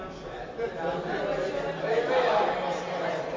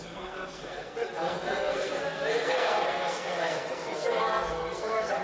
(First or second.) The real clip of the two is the first